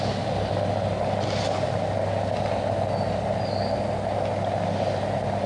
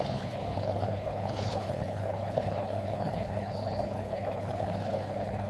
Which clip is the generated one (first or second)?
second